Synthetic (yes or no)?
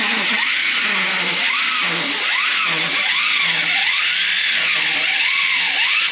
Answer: no